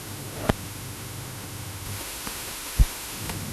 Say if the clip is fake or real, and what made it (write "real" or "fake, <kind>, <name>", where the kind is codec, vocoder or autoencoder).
fake, autoencoder, DAC-VAE